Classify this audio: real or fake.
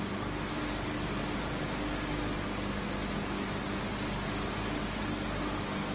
real